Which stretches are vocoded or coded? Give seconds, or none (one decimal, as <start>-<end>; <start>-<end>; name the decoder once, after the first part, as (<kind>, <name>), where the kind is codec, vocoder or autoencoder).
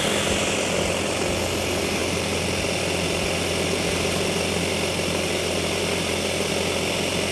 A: none